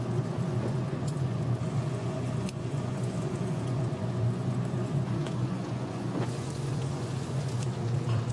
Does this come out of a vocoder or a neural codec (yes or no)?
yes